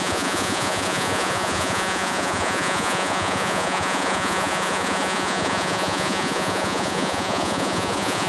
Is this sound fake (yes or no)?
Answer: yes